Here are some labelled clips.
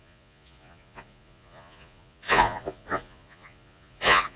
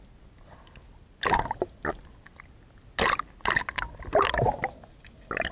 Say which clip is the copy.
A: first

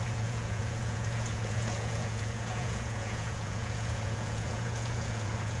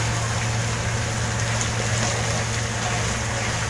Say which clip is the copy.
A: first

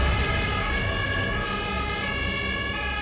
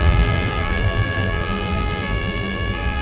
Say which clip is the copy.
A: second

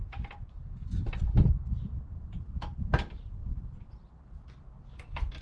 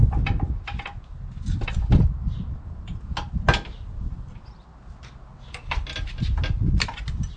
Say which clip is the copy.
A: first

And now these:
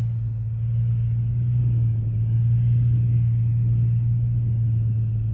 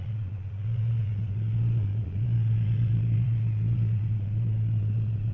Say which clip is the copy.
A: second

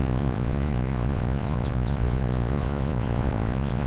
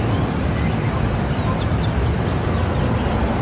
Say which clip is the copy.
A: first